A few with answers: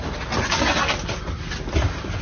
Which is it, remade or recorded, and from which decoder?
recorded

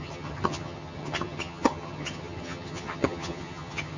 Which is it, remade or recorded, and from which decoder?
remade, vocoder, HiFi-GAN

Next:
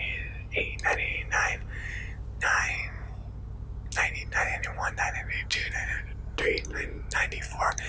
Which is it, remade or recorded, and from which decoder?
recorded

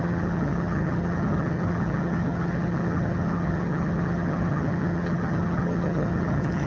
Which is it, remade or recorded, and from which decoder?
remade, vocoder, HiFi-GAN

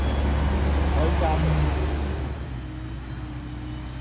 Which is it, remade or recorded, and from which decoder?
recorded